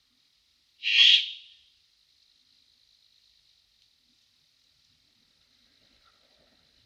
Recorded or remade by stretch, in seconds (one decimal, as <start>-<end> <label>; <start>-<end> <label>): 0.0-6.9 recorded